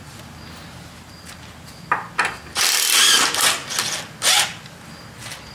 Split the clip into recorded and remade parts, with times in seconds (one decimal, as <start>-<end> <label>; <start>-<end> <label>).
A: 0.0-5.5 recorded

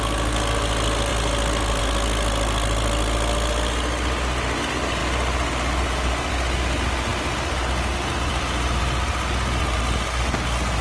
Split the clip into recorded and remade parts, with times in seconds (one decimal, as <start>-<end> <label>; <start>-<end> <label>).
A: 0.0-10.8 recorded